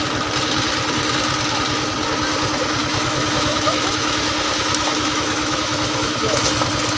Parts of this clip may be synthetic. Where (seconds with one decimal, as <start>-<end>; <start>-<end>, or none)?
2.8-6.4

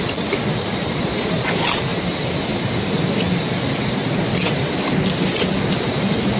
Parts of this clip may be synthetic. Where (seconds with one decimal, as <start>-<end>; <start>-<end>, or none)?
none

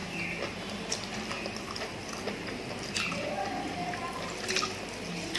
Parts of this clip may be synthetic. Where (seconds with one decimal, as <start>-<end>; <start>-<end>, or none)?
none